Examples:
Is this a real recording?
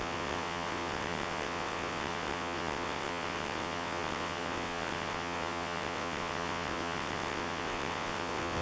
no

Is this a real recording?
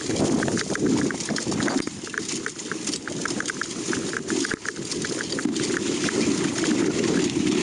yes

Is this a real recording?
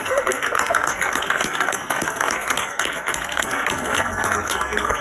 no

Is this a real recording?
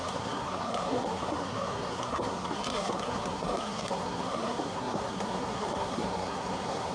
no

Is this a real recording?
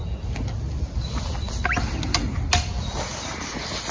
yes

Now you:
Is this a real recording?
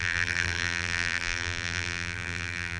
no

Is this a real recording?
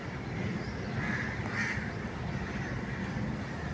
yes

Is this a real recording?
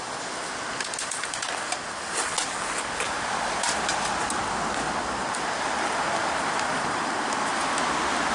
yes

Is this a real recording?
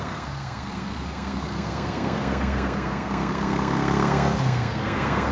no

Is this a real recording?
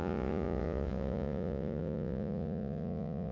no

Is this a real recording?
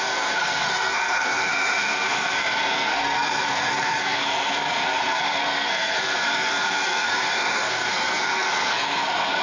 no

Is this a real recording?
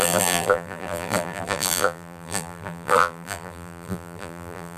no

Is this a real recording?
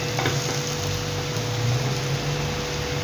yes